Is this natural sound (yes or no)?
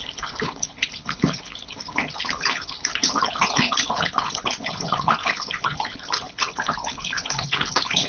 no